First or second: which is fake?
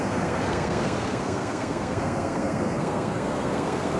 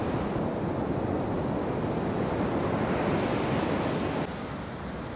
first